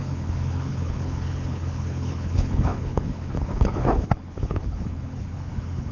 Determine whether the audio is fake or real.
fake